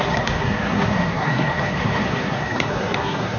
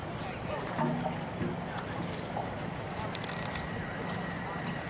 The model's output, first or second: first